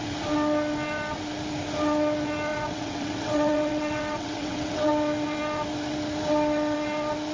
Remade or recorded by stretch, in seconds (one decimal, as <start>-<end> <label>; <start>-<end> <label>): 0.0-2.5 recorded; 2.5-4.9 remade; 4.9-7.3 recorded